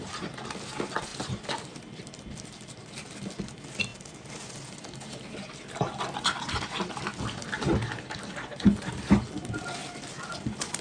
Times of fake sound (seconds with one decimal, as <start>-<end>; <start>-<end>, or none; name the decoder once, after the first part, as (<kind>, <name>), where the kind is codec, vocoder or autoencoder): 1.1-2.9 (vocoder, BigVGAN v2); 9.8-10.8